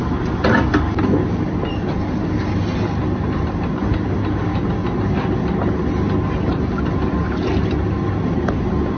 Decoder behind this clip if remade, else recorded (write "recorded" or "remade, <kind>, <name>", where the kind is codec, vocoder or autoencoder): recorded